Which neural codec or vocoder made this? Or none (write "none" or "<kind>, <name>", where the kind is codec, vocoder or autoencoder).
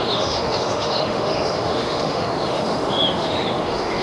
autoencoder, DAC-VAE